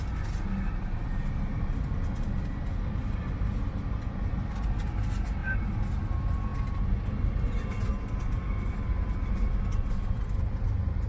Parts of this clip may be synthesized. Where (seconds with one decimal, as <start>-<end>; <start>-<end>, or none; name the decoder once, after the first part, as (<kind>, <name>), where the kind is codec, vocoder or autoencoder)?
none